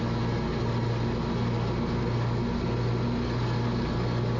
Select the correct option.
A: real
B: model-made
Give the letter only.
A